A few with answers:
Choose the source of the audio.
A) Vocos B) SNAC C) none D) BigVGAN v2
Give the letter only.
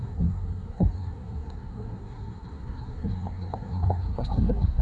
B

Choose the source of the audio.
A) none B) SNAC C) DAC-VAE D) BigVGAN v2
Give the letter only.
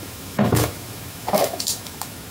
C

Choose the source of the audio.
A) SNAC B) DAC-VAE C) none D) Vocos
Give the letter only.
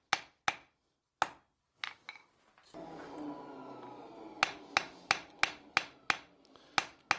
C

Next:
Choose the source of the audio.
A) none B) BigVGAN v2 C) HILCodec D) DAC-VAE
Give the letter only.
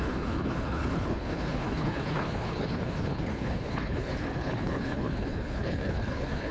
C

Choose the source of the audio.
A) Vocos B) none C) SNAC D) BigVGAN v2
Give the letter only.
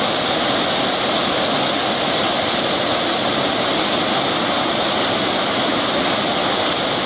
B